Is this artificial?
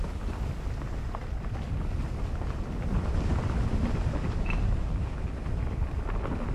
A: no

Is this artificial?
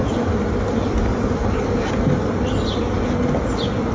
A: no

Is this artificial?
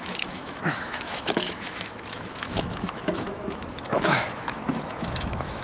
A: yes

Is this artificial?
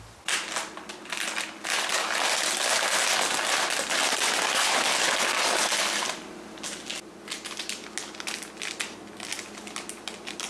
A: no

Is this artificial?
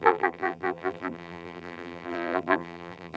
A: yes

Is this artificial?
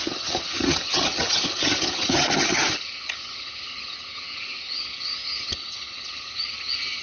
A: yes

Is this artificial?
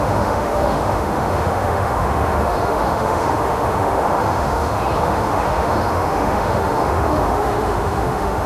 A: yes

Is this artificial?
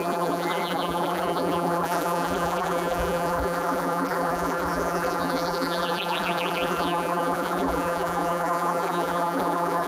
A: yes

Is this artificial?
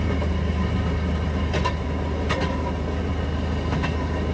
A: no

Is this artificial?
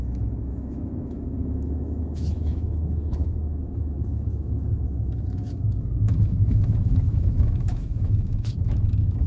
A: yes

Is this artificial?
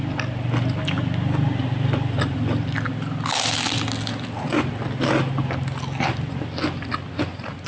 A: no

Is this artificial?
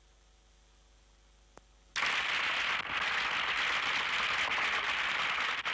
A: no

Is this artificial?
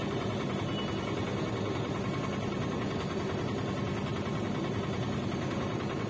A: no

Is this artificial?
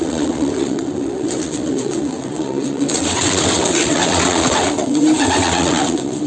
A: yes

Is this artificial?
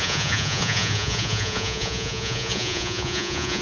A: yes